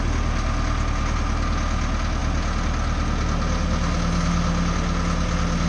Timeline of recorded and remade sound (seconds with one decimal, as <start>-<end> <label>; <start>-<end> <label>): 0.0-5.7 recorded